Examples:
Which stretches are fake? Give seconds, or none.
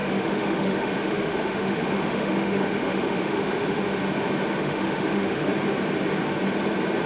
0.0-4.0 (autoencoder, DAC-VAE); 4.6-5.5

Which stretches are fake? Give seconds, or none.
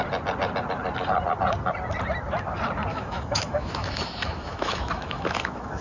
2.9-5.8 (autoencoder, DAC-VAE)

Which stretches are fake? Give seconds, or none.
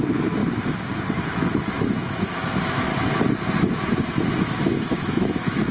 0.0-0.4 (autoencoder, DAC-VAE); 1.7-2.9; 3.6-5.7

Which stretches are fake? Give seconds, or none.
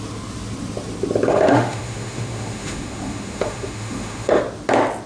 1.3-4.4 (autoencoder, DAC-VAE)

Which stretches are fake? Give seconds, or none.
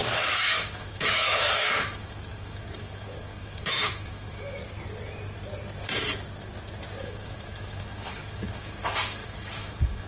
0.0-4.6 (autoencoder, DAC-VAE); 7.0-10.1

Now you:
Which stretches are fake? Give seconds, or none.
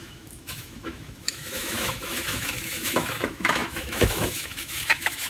0.0-5.3 (autoencoder, DAC-VAE)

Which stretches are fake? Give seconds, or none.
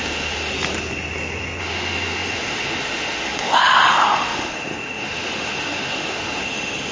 0.0-0.5 (autoencoder, DAC-VAE); 1.6-6.9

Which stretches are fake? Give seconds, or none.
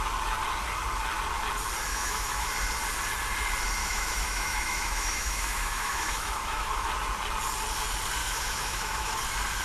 1.9-2.5 (autoencoder, DAC-VAE); 3.8-6.9; 8.2-9.1